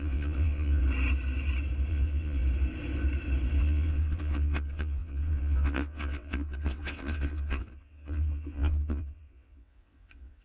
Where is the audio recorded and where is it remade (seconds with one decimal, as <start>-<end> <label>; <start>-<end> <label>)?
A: 0.0-0.8 remade; 0.8-1.9 recorded; 1.9-2.4 remade; 2.4-3.6 recorded; 3.6-10.4 remade